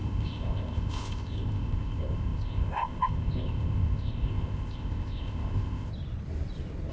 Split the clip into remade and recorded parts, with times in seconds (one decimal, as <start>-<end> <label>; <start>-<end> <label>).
0.0-5.9 remade; 5.9-6.9 recorded

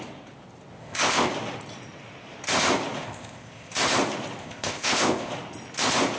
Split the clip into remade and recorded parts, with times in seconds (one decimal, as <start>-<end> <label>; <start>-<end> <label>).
0.0-0.8 recorded; 0.8-1.3 remade; 1.3-3.0 recorded; 3.0-3.7 remade; 3.7-4.4 recorded; 4.4-5.3 remade; 5.3-6.2 recorded

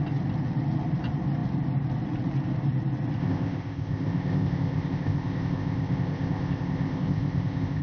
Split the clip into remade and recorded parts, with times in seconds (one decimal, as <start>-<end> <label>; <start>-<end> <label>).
0.0-3.2 recorded; 3.2-7.8 remade

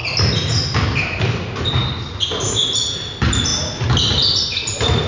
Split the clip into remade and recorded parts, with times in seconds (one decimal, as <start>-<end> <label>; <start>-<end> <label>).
0.0-5.1 recorded

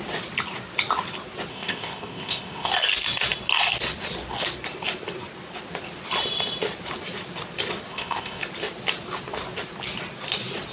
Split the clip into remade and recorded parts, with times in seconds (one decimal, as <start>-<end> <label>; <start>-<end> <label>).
0.0-1.5 recorded; 1.5-2.7 remade; 2.7-7.9 recorded; 7.9-8.4 remade; 8.4-10.7 recorded

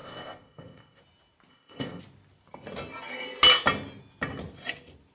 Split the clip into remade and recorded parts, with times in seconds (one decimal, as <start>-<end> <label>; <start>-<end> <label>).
0.0-1.0 remade; 1.0-1.5 recorded; 1.5-2.0 remade; 2.0-5.1 recorded

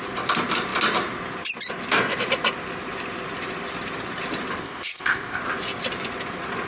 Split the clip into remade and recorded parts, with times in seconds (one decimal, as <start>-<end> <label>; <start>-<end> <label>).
0.0-4.6 recorded; 4.6-5.4 remade; 5.4-6.7 recorded